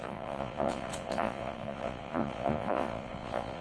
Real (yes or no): no